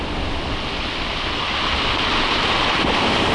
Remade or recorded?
recorded